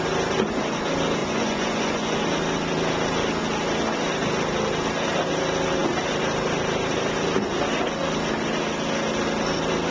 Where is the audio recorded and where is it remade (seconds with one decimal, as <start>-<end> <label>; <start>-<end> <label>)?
0.0-1.2 recorded; 1.2-2.2 remade; 2.2-9.9 recorded